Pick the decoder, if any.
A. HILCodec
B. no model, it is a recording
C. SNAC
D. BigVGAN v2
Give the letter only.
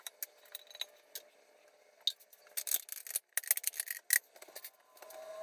B